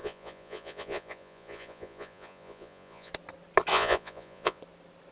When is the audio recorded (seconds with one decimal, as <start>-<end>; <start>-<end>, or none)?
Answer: 3.1-3.7; 4.6-5.1